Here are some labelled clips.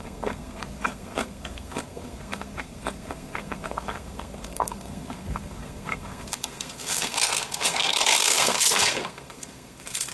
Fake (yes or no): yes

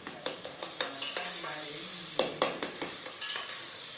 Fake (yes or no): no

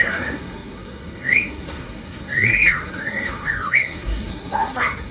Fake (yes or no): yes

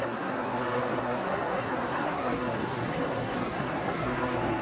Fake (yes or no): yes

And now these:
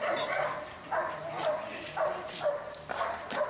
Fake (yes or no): no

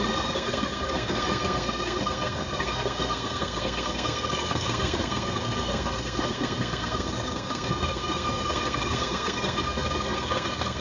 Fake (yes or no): yes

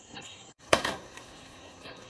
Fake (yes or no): yes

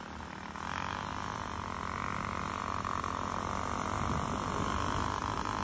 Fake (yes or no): no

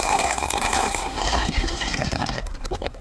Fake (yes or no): yes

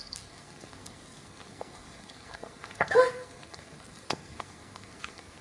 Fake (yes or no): yes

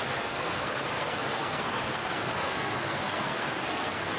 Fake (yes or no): yes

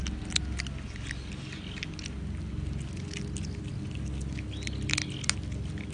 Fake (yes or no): no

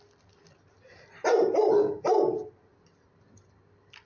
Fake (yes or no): no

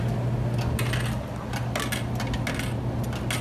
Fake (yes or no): no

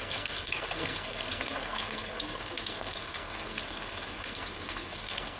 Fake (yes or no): yes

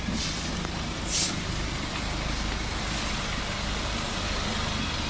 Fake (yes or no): no